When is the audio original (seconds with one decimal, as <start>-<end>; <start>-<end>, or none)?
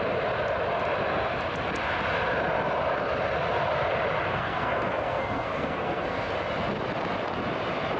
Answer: 0.0-4.3; 6.3-8.0